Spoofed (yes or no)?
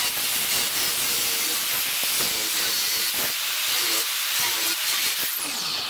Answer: no